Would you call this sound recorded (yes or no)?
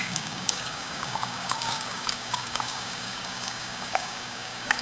no